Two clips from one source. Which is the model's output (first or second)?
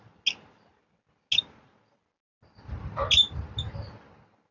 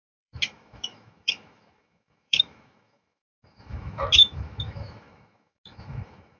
second